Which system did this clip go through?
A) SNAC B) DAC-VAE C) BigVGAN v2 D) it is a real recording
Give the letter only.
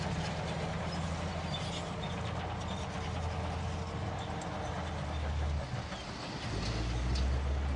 D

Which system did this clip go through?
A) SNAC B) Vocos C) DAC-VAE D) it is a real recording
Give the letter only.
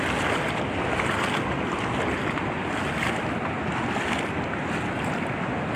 D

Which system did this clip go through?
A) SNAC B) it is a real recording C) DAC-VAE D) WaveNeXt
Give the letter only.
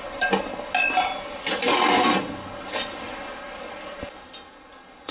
B